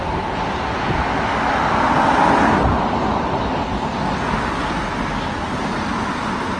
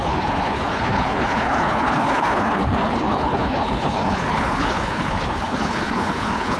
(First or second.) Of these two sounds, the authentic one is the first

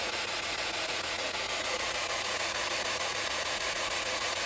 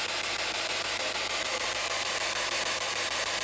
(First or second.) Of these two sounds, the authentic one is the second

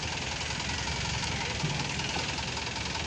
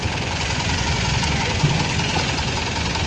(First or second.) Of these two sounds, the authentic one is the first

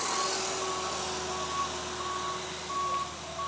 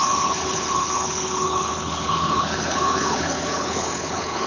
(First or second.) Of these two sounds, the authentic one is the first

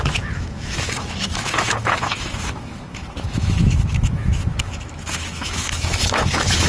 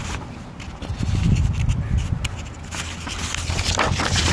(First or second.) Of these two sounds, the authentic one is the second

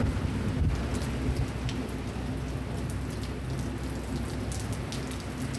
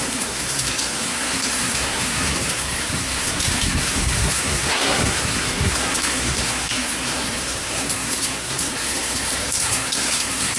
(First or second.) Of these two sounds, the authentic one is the first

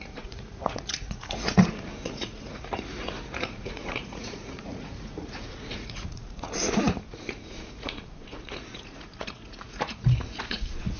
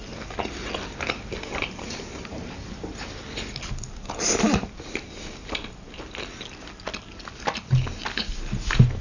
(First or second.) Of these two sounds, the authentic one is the second